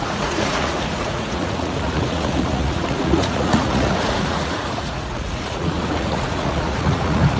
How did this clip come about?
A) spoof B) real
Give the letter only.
A